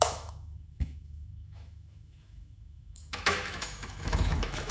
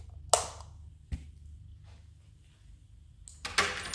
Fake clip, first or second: first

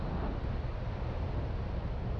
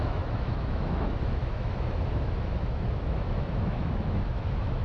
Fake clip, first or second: second